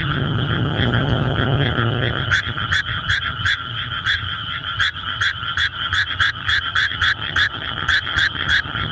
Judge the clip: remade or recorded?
remade